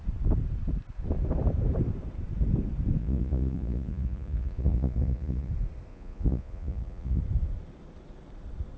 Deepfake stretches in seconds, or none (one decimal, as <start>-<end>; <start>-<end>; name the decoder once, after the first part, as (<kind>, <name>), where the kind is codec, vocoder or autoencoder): 3.0-5.5 (vocoder, Vocos); 5.9-7.2